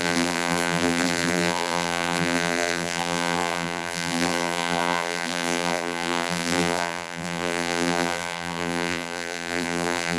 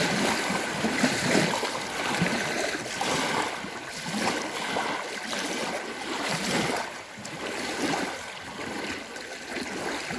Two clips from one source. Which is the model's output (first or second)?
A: first